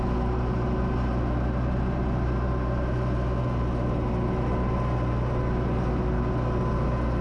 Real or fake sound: real